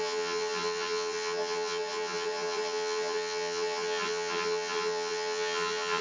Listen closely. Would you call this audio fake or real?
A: fake